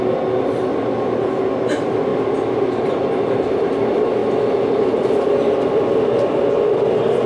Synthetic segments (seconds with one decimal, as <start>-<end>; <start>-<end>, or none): none